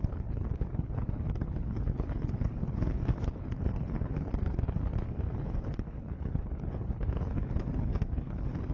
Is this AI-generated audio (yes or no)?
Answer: yes